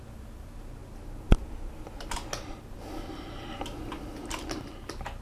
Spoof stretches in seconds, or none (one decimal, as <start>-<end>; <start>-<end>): none

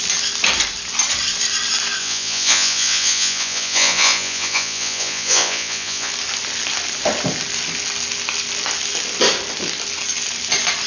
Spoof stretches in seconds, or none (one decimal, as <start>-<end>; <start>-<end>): 2.0-6.1

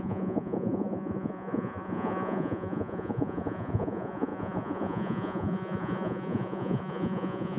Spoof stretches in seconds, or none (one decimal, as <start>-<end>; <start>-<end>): 0.0-7.6

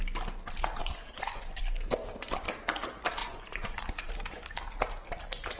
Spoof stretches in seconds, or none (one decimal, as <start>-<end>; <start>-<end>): 0.8-1.6; 3.2-4.1

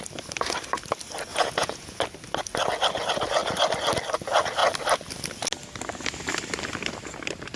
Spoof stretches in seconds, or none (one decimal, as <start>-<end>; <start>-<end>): 1.3-2.0